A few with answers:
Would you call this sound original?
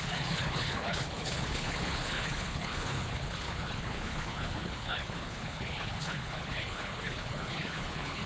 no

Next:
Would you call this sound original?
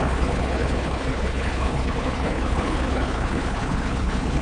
no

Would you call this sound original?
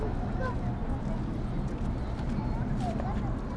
yes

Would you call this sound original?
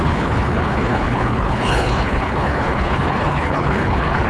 no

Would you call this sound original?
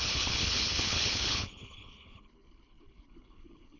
no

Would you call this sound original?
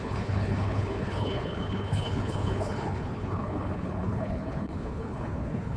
no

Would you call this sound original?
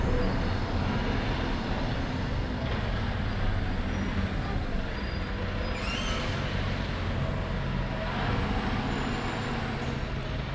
yes